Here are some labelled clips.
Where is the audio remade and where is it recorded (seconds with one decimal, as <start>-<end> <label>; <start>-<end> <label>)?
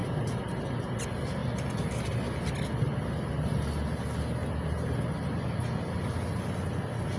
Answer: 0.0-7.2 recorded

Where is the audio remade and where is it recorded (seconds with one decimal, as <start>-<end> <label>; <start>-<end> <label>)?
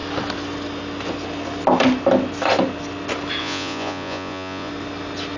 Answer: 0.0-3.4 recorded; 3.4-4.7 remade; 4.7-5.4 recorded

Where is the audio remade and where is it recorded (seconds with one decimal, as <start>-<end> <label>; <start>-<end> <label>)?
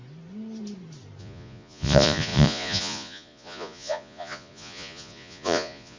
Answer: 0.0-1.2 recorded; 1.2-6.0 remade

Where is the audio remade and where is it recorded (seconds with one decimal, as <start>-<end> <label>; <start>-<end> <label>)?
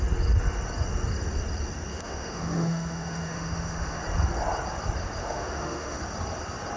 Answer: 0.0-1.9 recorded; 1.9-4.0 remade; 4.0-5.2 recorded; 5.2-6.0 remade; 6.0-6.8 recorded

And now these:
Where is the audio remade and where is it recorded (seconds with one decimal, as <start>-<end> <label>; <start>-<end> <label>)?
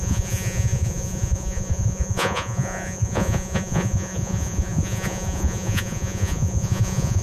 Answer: 0.0-7.2 remade